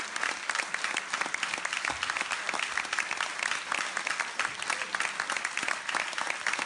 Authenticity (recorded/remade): recorded